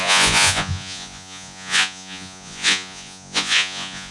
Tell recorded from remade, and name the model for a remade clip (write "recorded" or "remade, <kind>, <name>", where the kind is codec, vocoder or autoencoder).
remade, vocoder, Vocos